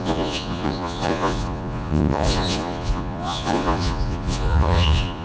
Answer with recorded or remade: remade